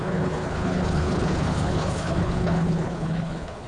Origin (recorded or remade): remade